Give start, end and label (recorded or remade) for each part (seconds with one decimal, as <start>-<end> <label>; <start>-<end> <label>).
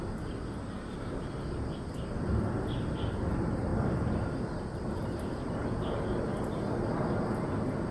0.0-3.7 recorded; 3.7-4.3 remade; 4.3-4.7 recorded; 4.7-6.0 remade; 6.0-7.9 recorded